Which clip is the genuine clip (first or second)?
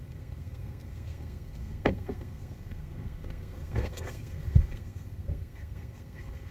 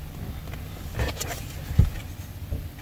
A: second